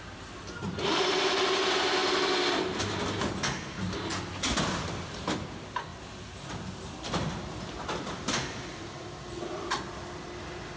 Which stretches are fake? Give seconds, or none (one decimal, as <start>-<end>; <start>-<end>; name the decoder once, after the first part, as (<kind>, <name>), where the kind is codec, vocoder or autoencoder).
none